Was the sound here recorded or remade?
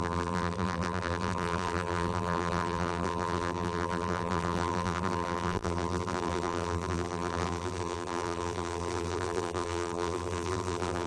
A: remade